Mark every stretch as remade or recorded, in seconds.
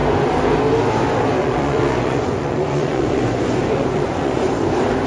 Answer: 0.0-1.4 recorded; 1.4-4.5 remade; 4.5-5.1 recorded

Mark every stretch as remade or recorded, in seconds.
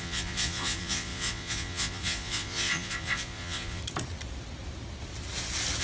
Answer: 0.0-3.8 remade; 3.8-5.8 recorded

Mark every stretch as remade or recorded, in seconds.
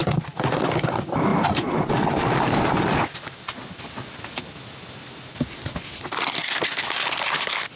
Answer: 0.0-7.8 recorded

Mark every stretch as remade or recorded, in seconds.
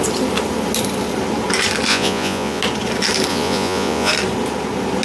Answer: 0.0-1.9 recorded; 1.9-2.6 remade; 2.6-3.3 recorded; 3.3-4.1 remade; 4.1-5.0 recorded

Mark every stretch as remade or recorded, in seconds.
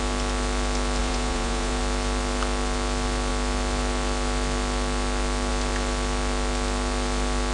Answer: 0.0-1.0 recorded; 1.0-1.8 remade; 1.8-7.5 recorded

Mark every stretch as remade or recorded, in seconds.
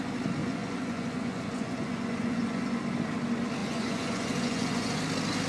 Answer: 0.0-0.4 recorded; 0.4-2.8 remade; 2.8-3.6 recorded; 3.6-5.0 remade; 5.0-5.5 recorded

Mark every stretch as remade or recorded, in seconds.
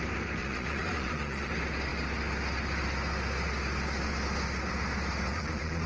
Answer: 0.0-0.4 recorded; 0.4-1.5 remade; 1.5-5.3 recorded; 5.3-5.9 remade